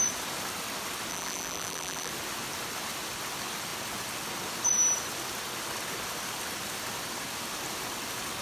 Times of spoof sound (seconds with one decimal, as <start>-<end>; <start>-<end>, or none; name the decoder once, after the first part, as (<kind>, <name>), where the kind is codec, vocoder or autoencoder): 1.1-2.1 (vocoder, BigVGAN v2)